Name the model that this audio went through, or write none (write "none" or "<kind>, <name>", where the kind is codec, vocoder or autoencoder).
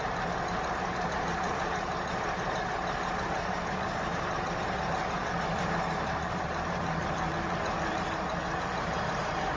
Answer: vocoder, BigVGAN v2